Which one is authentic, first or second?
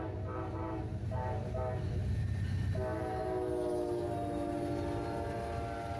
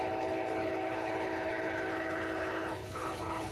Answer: first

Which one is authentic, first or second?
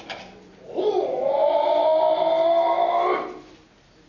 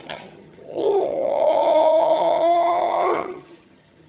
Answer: first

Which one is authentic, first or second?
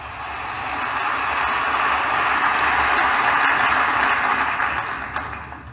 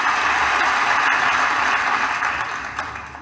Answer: first